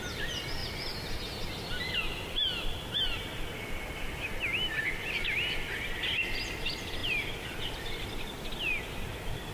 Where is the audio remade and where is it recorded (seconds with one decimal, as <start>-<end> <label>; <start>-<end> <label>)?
0.0-7.0 recorded; 7.0-8.7 remade; 8.7-9.5 recorded